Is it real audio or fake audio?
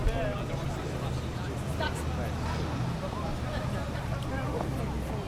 real